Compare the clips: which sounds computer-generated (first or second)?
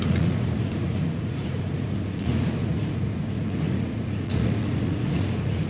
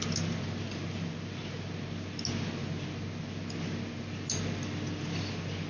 first